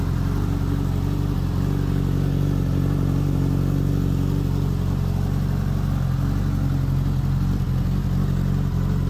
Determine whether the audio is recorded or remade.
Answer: recorded